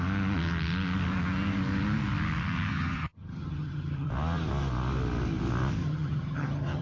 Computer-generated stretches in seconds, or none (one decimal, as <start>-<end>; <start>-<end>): 2.7-4.1; 5.8-6.8